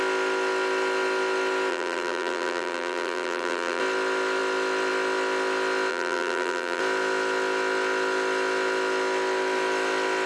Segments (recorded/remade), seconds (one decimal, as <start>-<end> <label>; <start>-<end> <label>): 0.0-1.7 recorded; 1.7-3.8 remade; 3.8-5.9 recorded; 5.9-6.8 remade; 6.8-10.3 recorded